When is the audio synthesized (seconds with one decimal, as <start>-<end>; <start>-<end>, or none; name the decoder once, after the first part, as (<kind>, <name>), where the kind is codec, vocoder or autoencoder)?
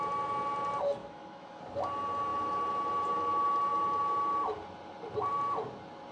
1.0-1.6 (autoencoder, DAC-VAE)